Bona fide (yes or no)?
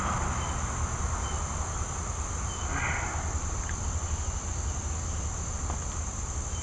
yes